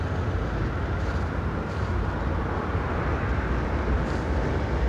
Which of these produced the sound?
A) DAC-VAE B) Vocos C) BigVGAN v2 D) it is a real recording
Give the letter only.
D